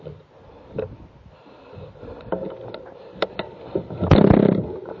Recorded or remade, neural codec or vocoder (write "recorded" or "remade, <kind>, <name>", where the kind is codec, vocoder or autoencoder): recorded